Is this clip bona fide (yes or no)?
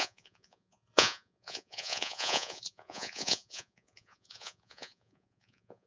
no